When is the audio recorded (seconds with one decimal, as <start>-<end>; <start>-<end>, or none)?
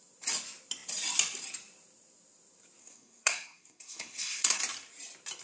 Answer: 0.0-2.8; 4.6-5.4